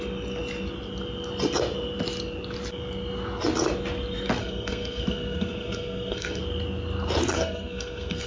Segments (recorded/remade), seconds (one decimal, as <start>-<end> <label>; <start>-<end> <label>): 0.0-4.4 recorded; 4.4-6.4 remade; 6.4-7.3 recorded; 7.3-8.3 remade